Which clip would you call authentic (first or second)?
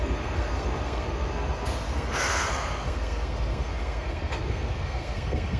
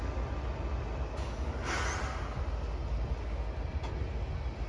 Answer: second